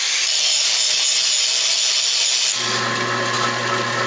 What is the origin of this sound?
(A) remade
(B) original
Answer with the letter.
B